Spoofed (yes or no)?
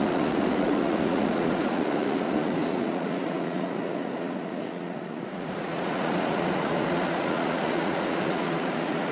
yes